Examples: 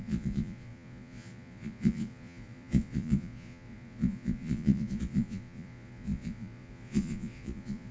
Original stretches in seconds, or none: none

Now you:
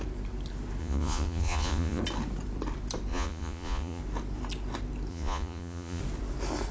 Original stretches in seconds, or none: 0.0-0.8; 2.0-3.1; 4.0-5.1; 6.0-6.7

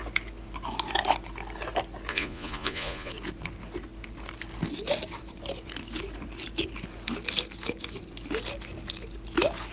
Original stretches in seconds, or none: 0.0-2.1; 3.1-9.7

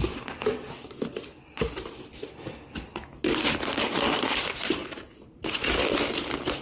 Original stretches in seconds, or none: 0.0-4.8; 5.7-6.6